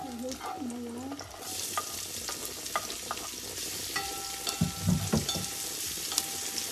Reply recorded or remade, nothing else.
recorded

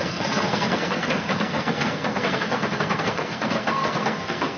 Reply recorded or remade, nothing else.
remade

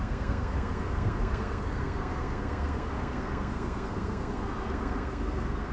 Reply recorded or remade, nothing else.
remade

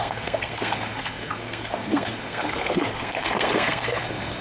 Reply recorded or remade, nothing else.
remade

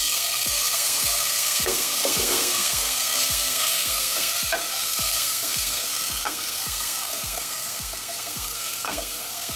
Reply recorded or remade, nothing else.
remade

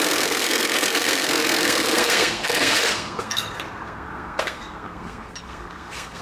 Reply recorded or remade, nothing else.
remade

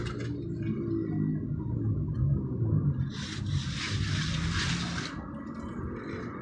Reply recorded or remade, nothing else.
recorded